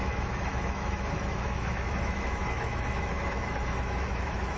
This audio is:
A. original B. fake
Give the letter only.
B